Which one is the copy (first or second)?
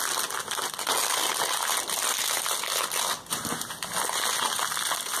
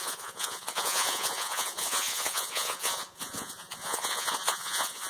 second